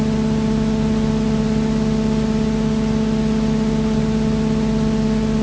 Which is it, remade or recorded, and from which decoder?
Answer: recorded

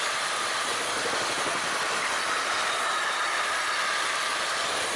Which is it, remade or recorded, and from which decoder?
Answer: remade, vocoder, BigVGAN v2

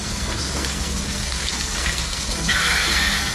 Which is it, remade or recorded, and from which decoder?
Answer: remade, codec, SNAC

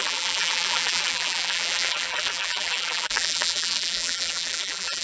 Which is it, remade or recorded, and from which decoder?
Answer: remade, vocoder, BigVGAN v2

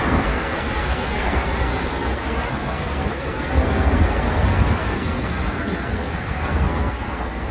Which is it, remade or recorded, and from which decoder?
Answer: remade, codec, SNAC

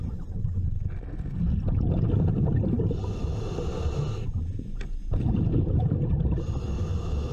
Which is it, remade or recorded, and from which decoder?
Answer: recorded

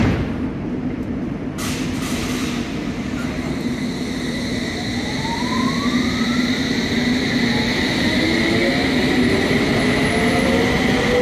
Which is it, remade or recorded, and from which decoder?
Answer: recorded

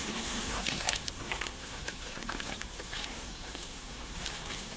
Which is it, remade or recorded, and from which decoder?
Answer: remade, codec, SNAC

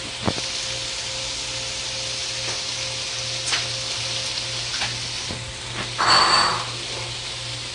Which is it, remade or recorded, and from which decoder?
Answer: recorded